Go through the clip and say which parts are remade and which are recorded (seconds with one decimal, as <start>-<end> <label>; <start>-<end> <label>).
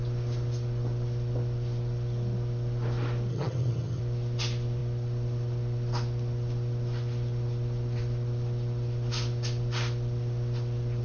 0.0-3.3 recorded; 3.3-4.0 remade; 4.0-11.0 recorded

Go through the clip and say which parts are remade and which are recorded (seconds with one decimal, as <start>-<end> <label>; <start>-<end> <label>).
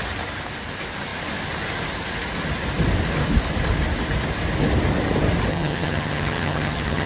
0.0-5.5 recorded; 5.5-7.1 remade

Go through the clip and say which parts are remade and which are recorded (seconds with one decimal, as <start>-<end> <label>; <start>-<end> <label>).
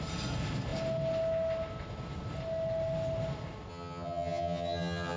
0.0-3.7 recorded; 3.7-5.2 remade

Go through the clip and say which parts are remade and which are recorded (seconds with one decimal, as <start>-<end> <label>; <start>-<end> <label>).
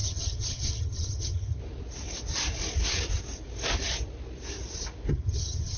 0.0-1.6 remade; 1.6-5.1 recorded; 5.1-5.8 remade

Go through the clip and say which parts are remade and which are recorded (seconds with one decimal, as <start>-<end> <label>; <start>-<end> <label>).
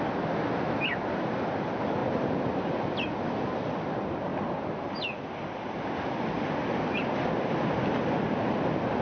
0.0-9.0 recorded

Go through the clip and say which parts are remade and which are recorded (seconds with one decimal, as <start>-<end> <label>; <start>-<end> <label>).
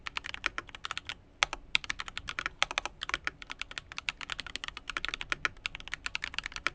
0.0-6.7 recorded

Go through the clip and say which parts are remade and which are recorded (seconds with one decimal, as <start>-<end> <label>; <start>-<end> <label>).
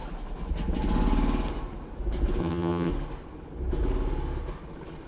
0.0-2.4 recorded; 2.4-2.9 remade; 2.9-5.1 recorded